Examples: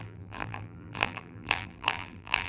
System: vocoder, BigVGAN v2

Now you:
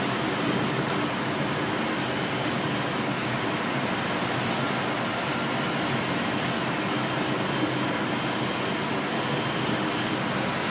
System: none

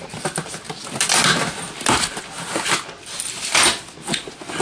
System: none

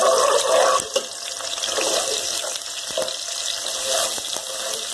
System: none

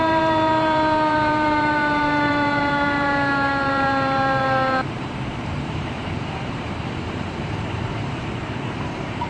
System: vocoder, BigVGAN v2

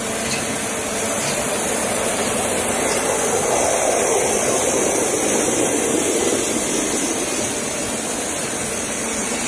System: vocoder, BigVGAN v2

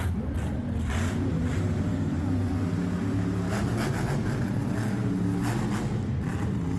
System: none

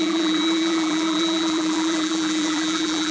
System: vocoder, BigVGAN v2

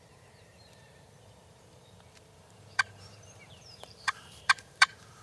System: vocoder, BigVGAN v2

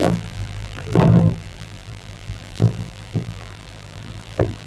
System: vocoder, BigVGAN v2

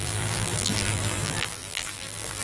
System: vocoder, BigVGAN v2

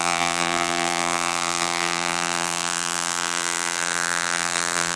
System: vocoder, BigVGAN v2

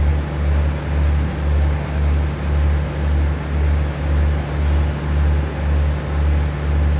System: none